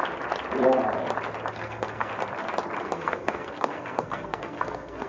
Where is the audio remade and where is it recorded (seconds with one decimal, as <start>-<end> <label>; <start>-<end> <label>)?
0.0-1.5 recorded; 1.5-2.1 remade; 2.1-2.8 recorded; 2.8-5.1 remade